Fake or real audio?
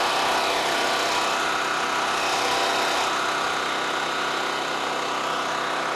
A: real